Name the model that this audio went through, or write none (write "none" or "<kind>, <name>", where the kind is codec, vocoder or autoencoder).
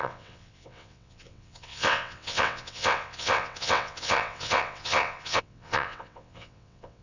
vocoder, WaveNeXt